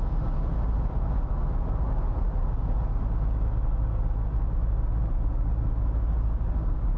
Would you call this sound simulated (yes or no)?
no